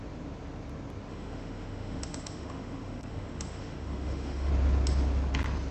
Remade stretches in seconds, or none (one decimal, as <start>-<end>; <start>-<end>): 1.1-4.5